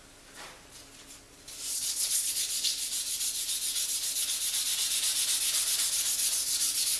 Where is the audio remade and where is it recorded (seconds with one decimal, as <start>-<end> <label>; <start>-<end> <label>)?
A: 0.0-1.7 recorded; 1.7-2.3 remade; 2.3-7.0 recorded